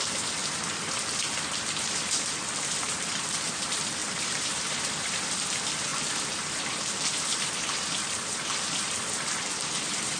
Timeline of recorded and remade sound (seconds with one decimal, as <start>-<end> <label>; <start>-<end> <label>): 0.0-4.0 recorded; 4.0-4.7 remade; 4.7-5.9 recorded; 5.9-6.6 remade; 6.6-10.2 recorded